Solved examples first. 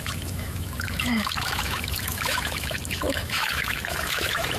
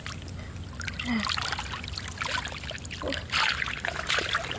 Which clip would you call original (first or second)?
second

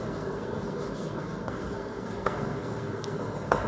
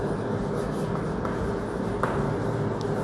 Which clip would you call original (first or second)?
second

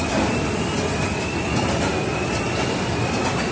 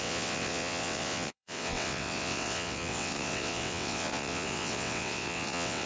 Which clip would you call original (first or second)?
first